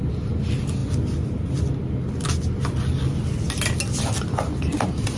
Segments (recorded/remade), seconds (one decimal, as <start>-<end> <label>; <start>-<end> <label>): 0.0-5.2 recorded